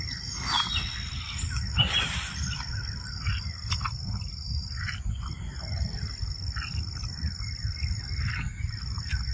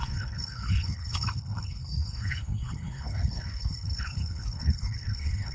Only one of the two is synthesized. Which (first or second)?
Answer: second